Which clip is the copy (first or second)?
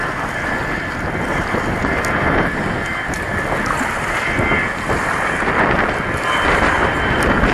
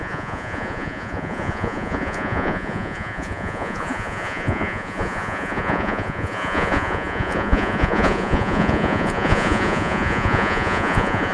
second